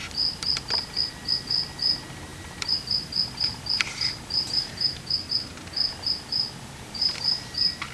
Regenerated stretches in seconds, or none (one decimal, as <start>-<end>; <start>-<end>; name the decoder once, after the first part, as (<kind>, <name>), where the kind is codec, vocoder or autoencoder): 2.3-5.3 (vocoder, BigVGAN v2)